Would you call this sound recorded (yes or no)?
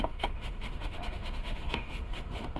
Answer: no